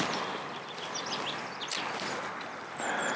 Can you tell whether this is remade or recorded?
recorded